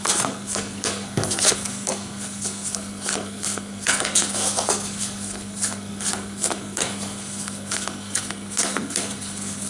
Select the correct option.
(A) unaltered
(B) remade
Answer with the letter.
B